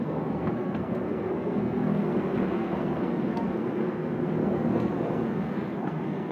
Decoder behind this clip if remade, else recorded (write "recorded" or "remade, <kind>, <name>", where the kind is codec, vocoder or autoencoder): remade, codec, SNAC